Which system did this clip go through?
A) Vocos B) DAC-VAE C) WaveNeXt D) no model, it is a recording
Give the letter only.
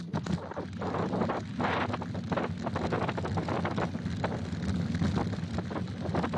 D